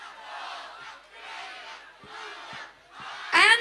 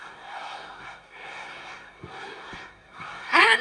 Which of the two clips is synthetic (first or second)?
second